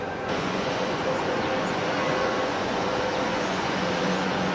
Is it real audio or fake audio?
fake